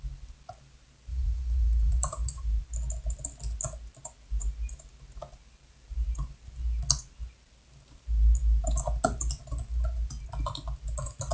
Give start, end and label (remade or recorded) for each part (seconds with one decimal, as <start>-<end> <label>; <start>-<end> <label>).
0.0-1.1 recorded; 1.1-2.6 remade; 2.6-11.3 recorded